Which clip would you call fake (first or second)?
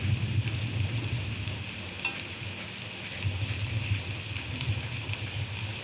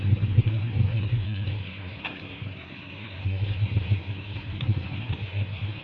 second